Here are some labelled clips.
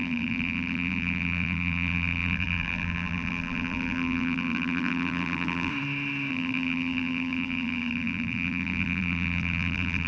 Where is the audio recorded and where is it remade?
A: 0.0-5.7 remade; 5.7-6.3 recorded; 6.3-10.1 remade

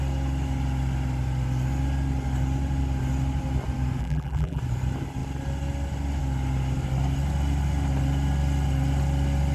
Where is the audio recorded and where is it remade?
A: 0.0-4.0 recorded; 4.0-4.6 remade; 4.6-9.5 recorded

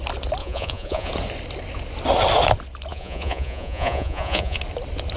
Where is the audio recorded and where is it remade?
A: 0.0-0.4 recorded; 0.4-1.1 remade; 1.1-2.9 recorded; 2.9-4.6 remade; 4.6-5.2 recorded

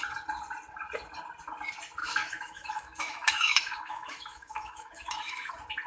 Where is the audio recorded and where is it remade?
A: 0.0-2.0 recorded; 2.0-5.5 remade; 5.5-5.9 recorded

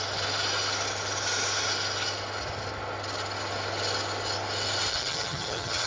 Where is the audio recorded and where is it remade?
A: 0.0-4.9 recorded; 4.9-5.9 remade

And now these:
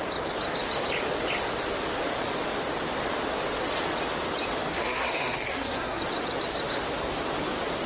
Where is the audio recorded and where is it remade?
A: 0.0-4.7 recorded; 4.7-6.0 remade; 6.0-7.9 recorded

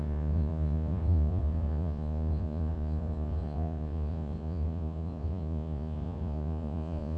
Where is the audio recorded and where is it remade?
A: 0.0-7.2 remade